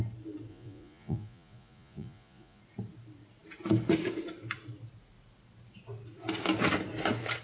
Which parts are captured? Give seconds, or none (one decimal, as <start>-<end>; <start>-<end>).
0.0-0.5; 2.6-7.4